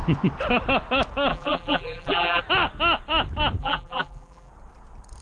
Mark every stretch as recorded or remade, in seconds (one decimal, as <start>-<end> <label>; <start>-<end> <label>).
0.0-1.3 recorded; 1.3-2.4 remade; 2.4-3.6 recorded; 3.6-4.5 remade; 4.5-5.2 recorded